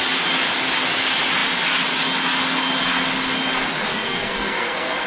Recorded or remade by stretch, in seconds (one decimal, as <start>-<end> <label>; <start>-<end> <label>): 0.0-3.9 recorded; 3.9-5.1 remade